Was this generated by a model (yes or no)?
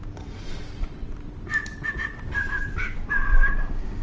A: yes